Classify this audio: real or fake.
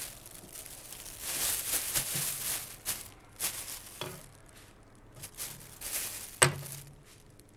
real